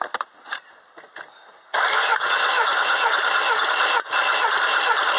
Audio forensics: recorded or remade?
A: remade